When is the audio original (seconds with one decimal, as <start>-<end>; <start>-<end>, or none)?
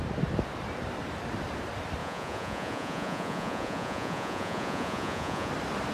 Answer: 0.0-2.0; 5.5-5.9